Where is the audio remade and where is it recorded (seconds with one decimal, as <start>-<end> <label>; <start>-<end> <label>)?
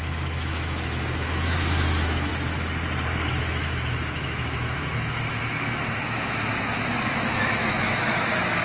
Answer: 0.0-2.3 remade; 2.3-3.3 recorded; 3.3-8.6 remade